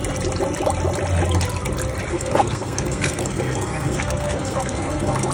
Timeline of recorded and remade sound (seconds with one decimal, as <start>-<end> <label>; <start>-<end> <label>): 0.0-2.1 recorded; 2.1-5.3 remade